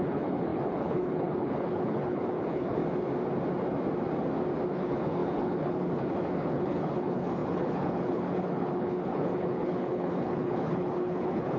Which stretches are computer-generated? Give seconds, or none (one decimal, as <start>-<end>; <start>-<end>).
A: 0.0-2.8; 4.7-11.6